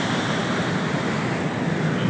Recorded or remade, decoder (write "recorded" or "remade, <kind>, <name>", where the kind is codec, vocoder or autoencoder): recorded